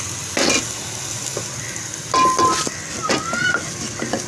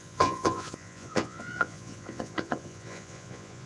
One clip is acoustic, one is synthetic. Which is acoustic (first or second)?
first